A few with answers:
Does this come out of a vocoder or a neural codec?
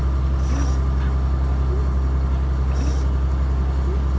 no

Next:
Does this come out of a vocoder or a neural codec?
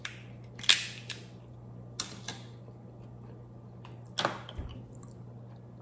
no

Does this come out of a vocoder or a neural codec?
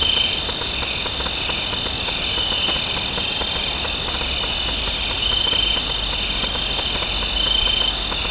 no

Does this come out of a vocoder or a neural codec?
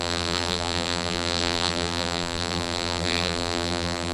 yes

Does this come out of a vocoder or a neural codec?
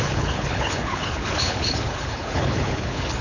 yes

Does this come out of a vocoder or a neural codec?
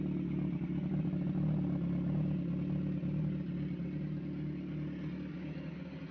no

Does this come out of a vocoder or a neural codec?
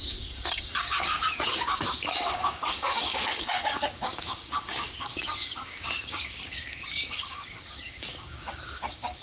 yes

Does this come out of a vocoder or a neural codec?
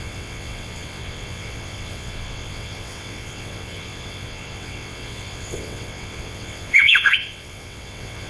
yes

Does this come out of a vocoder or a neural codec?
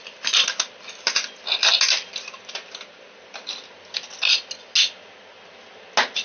no